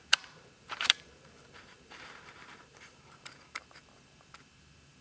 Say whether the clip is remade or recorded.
remade